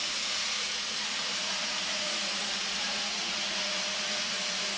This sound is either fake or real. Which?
fake